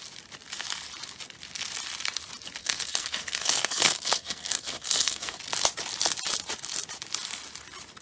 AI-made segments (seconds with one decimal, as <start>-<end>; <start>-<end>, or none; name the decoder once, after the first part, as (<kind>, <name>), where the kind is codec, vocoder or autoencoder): 2.6-5.4 (codec, SNAC)